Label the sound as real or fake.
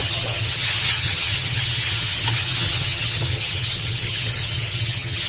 fake